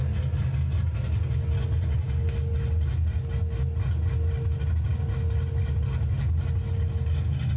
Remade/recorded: recorded